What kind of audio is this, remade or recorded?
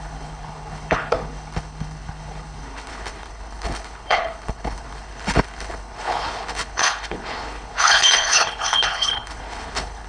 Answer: remade